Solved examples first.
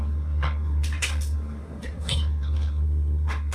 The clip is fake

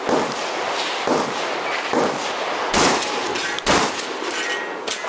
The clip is real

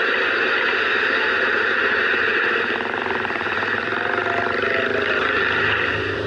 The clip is real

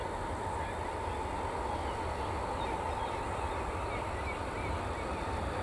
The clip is real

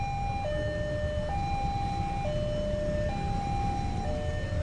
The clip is real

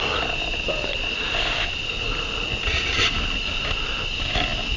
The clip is real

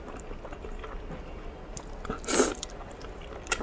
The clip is real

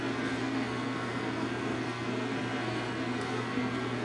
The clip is fake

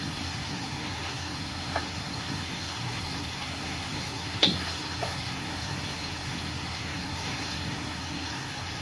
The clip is fake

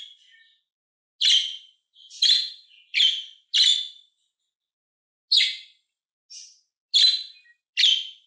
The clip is real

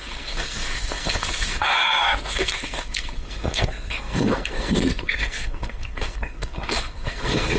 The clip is fake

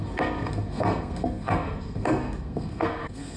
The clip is fake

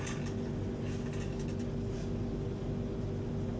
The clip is real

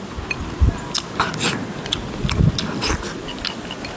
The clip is real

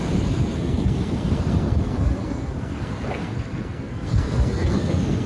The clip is fake